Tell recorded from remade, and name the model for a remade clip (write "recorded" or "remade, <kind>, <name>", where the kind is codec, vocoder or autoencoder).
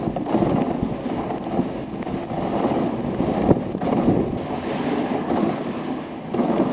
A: recorded